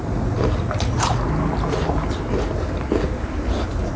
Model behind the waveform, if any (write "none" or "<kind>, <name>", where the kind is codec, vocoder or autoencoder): none